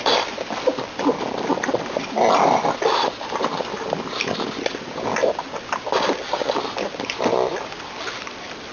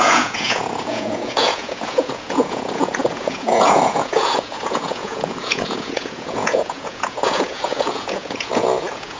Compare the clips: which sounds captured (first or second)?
first